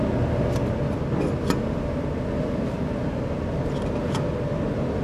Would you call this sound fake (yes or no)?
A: no